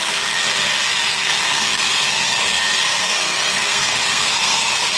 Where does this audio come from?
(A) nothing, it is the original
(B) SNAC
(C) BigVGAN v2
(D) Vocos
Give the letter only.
B